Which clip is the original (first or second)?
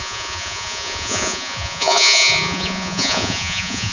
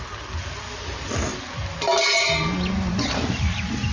second